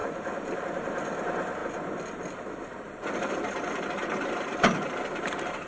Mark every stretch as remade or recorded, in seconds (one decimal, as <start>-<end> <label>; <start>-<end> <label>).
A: 0.0-0.6 remade; 0.6-1.6 recorded; 1.6-5.0 remade; 5.0-5.7 recorded